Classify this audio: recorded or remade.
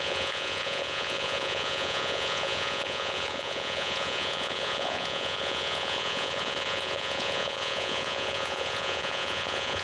remade